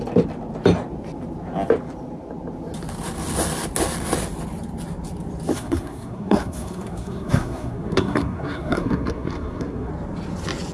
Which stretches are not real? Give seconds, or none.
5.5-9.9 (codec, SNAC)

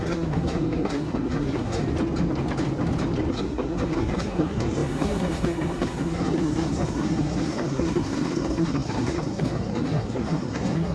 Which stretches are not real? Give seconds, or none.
0.0-1.8 (codec, SNAC); 3.3-10.9

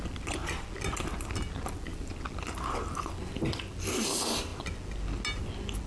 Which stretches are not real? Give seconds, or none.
none

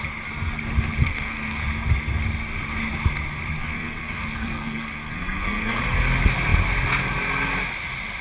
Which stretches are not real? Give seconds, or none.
1.0-1.6 (codec, SNAC); 3.6-5.8